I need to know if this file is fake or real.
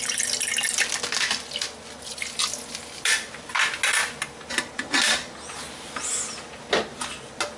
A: real